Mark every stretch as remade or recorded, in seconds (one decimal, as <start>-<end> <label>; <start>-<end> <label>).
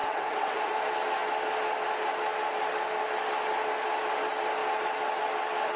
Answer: 0.0-0.7 remade; 0.7-5.8 recorded